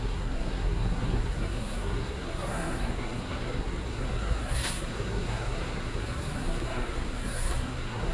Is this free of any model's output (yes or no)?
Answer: no